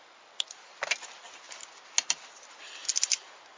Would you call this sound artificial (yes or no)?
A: no